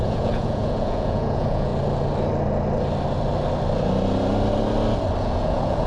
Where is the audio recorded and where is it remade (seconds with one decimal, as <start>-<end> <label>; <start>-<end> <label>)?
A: 0.0-1.7 remade; 1.7-5.2 recorded; 5.2-5.9 remade